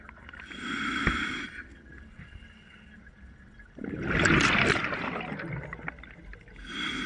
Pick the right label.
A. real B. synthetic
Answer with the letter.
A